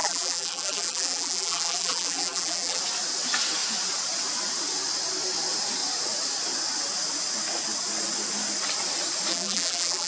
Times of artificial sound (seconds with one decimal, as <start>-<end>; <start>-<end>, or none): 0.0-2.8; 9.3-10.1